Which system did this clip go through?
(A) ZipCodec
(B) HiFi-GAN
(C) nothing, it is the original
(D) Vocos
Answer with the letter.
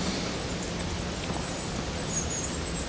C